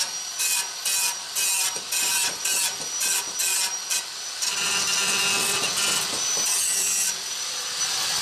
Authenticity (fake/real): real